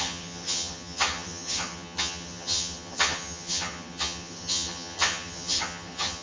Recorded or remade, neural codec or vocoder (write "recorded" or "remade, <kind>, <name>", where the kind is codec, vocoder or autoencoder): remade, vocoder, HiFi-GAN